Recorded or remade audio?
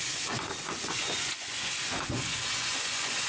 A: remade